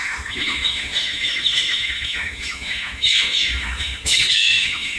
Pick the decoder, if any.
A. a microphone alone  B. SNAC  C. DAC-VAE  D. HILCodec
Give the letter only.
C